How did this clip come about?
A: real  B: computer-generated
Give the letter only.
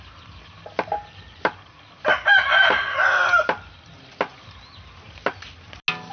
A